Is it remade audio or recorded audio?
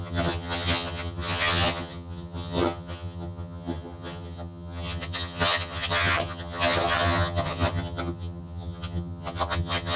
remade